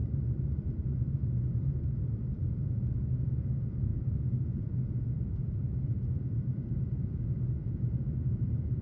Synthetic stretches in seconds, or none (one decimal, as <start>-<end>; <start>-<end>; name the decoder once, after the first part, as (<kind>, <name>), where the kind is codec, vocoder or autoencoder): 2.0-8.8 (vocoder, Vocos)